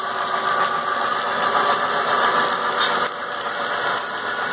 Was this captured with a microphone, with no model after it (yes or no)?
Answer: no